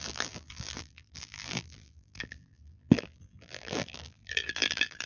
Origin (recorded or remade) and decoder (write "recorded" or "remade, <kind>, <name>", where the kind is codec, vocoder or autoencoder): remade, vocoder, BigVGAN v2